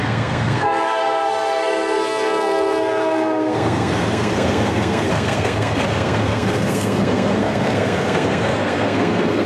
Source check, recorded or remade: remade